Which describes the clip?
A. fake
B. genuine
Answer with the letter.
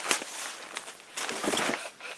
B